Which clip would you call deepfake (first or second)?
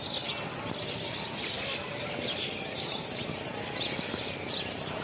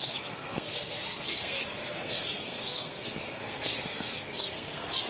second